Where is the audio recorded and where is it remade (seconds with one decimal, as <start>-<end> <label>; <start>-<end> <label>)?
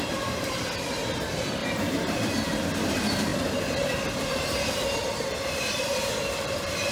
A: 0.0-3.3 remade; 3.3-5.3 recorded; 5.3-6.9 remade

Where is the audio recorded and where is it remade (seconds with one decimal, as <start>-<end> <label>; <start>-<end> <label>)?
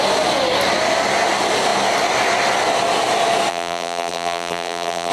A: 0.0-3.5 recorded; 3.5-5.1 remade